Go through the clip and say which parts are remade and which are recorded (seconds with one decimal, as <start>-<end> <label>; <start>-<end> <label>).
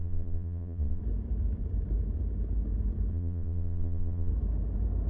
0.0-1.0 remade; 1.0-3.1 recorded; 3.1-4.3 remade; 4.3-5.1 recorded